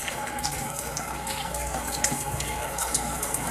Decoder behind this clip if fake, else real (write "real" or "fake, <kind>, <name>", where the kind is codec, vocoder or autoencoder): fake, codec, SNAC